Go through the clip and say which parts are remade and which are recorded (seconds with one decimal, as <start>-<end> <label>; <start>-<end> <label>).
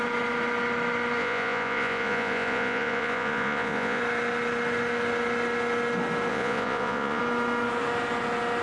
0.0-1.2 recorded; 1.2-4.0 remade; 4.0-6.3 recorded; 6.3-7.2 remade; 7.2-8.6 recorded